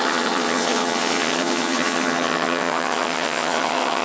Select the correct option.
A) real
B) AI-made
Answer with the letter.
B